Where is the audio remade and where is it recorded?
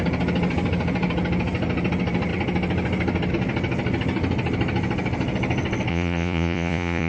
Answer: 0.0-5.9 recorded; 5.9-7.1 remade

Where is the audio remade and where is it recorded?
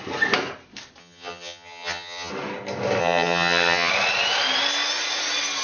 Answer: 0.0-1.0 recorded; 1.0-2.3 remade; 2.3-3.0 recorded; 3.0-3.9 remade; 3.9-5.6 recorded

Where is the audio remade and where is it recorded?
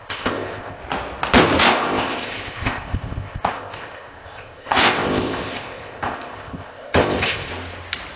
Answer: 0.0-0.8 remade; 0.8-1.6 recorded; 1.6-7.5 remade; 7.5-8.2 recorded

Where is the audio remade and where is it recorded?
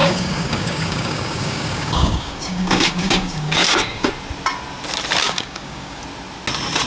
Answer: 0.0-4.1 remade; 4.1-5.2 recorded; 5.2-6.0 remade; 6.0-6.9 recorded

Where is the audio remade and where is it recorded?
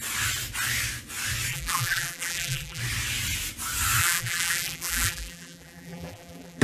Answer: 0.0-1.5 recorded; 1.5-2.8 remade; 2.8-4.0 recorded; 4.0-6.6 remade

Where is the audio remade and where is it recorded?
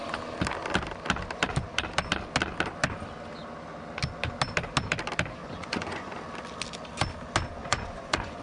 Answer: 0.0-5.4 recorded; 5.4-6.2 remade; 6.2-7.6 recorded; 7.6-8.4 remade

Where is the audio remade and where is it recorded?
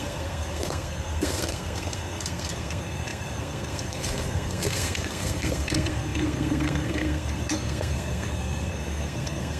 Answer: 0.0-9.6 remade